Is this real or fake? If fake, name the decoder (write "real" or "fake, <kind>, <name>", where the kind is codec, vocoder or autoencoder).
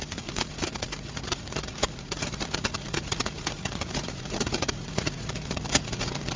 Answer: fake, vocoder, Vocos